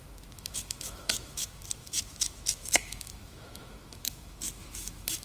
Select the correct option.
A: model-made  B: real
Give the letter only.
A